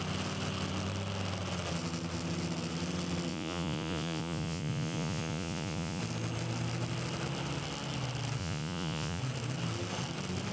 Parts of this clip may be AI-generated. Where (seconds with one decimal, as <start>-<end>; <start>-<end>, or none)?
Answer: 3.3-6.0; 8.4-9.2